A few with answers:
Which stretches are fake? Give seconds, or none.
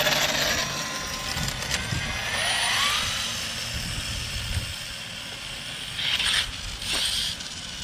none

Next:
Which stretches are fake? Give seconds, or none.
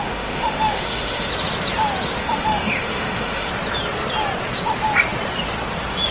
0.0-1.3 (autoencoder, DAC-VAE); 2.2-3.5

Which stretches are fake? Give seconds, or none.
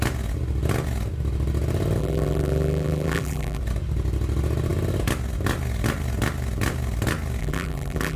2.0-3.6 (vocoder, BigVGAN v2); 7.4-8.2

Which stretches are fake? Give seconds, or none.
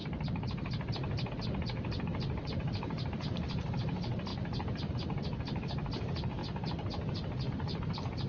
1.3-4.3 (vocoder, BigVGAN v2); 4.9-6.4; 7.5-8.3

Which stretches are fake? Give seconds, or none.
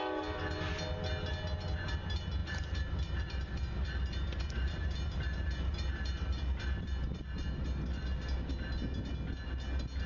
2.4-7.2 (vocoder, BigVGAN v2)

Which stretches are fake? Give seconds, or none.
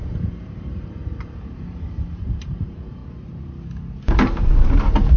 0.0-3.0 (vocoder, BigVGAN v2)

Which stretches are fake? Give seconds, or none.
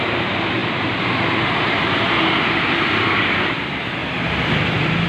0.0-4.0 (vocoder, BigVGAN v2)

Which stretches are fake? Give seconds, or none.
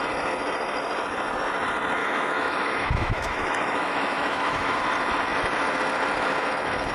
2.0-4.8 (autoencoder, DAC-VAE)